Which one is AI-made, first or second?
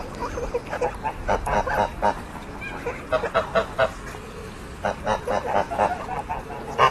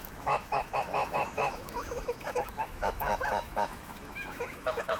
second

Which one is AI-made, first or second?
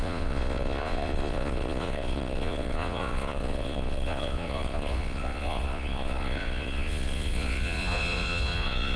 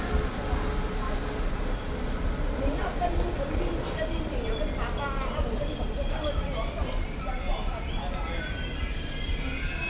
first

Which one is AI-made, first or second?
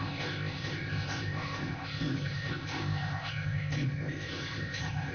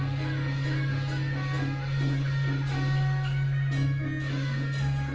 first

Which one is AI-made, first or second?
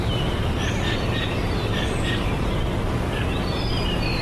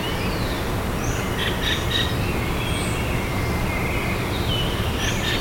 first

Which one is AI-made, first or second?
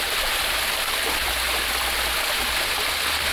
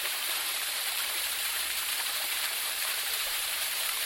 second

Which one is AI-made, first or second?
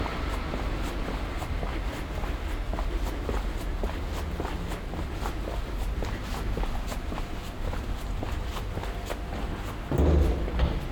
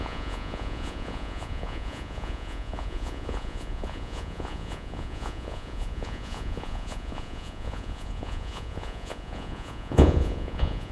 second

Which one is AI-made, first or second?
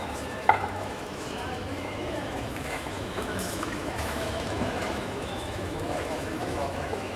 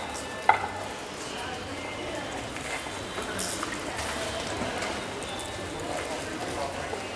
first